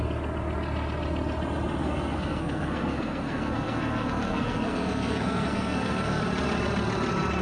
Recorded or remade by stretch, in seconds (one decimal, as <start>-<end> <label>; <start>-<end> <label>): 0.0-1.8 recorded; 1.8-6.2 remade; 6.2-7.4 recorded